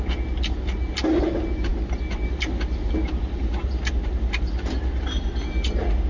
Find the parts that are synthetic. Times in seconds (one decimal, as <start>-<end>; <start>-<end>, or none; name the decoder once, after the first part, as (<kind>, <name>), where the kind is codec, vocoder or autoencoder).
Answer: none